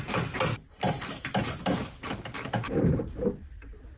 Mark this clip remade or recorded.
remade